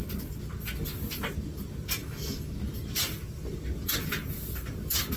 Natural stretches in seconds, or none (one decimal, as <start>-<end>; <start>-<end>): 0.0-2.0; 2.6-5.2